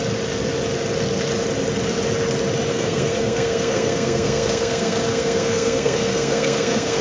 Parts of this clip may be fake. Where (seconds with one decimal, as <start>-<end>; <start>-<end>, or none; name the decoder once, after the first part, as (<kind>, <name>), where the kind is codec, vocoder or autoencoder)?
2.7-7.0 (codec, SNAC)